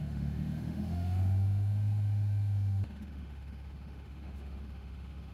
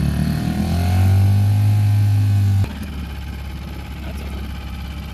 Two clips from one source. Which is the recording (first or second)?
second